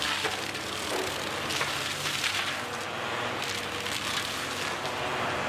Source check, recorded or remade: recorded